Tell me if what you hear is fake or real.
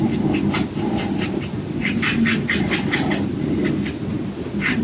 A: real